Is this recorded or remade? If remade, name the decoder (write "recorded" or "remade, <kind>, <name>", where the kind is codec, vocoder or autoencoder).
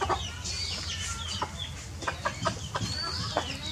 recorded